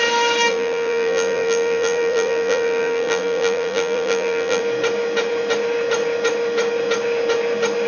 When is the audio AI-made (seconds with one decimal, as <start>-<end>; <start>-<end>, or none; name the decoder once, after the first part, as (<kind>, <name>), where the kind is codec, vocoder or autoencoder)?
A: 0.5-4.6 (vocoder, BigVGAN v2)